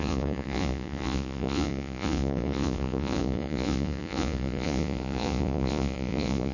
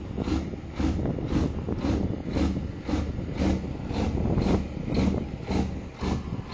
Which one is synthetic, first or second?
first